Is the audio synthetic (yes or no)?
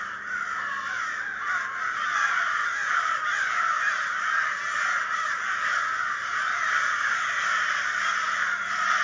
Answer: no